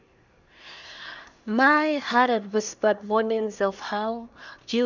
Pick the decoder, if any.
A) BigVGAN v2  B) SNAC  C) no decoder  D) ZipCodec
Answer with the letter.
B